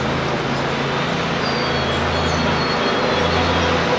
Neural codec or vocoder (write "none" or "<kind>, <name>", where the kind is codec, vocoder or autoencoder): none